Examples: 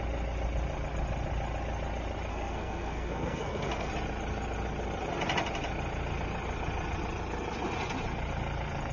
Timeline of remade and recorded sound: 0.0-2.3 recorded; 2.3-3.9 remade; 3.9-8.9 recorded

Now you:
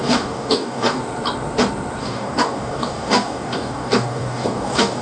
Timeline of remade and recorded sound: 0.0-1.0 remade; 1.0-2.0 recorded; 2.0-5.0 remade

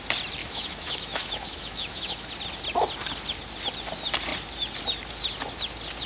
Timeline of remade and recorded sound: 0.0-0.4 recorded; 0.4-2.3 remade; 2.3-6.1 recorded